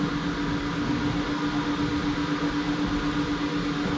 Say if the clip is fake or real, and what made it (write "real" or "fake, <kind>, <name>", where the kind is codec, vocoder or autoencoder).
real